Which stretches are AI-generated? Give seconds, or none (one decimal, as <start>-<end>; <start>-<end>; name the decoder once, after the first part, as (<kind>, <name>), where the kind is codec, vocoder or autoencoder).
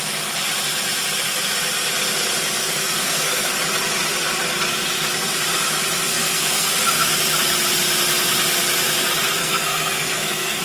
2.6-3.5 (codec, SNAC); 6.1-6.7; 9.4-10.6